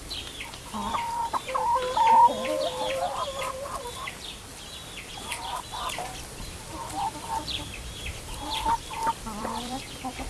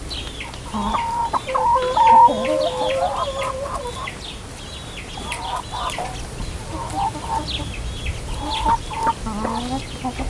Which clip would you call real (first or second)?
second